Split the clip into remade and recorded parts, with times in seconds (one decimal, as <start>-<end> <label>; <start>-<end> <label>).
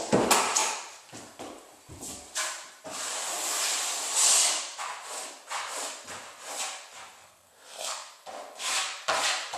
0.0-7.2 recorded; 7.2-8.1 remade; 8.1-9.6 recorded